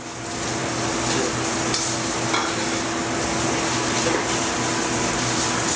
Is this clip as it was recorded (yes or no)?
yes